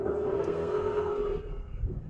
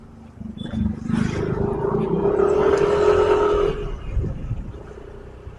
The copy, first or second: first